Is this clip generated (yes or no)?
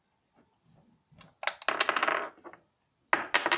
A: no